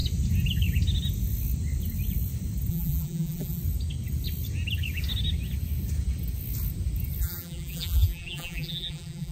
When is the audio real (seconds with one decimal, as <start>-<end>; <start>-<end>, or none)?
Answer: 0.0-2.7; 3.6-7.2